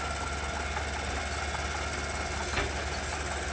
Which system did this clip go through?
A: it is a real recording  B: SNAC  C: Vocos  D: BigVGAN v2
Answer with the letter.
A